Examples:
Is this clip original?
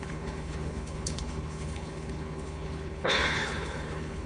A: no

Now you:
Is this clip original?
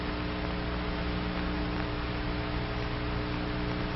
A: yes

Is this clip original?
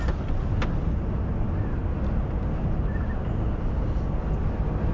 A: yes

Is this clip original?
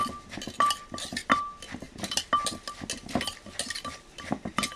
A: yes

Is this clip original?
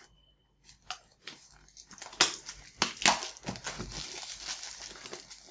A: yes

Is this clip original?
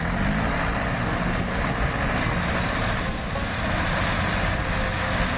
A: yes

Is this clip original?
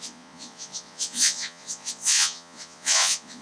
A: no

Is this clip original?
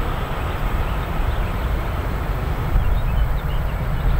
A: no